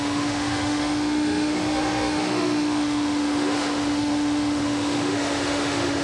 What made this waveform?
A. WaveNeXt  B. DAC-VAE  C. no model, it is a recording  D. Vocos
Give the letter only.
B